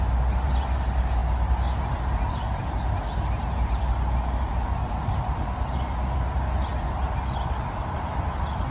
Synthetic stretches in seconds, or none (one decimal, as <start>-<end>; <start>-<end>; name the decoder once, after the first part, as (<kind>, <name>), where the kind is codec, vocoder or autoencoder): none